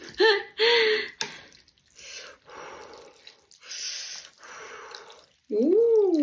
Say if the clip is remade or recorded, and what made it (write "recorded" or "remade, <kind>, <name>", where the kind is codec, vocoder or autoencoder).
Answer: recorded